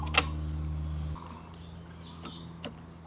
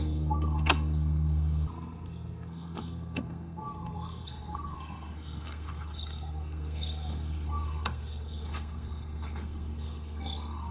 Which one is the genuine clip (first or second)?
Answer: first